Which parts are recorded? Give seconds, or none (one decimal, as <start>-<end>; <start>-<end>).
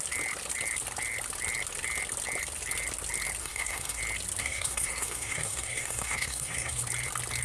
0.0-3.4; 4.0-4.4; 6.8-7.4